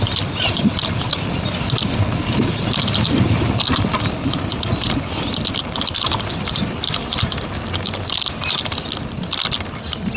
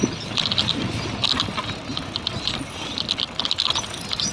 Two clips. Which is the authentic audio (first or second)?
second